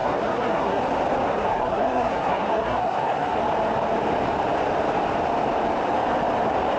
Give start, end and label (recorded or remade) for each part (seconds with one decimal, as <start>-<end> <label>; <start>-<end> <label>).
0.0-0.8 remade; 0.8-1.3 recorded; 1.3-3.4 remade; 3.4-6.8 recorded